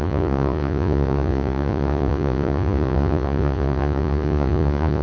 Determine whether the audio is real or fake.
fake